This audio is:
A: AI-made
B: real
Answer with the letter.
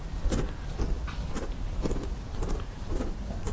B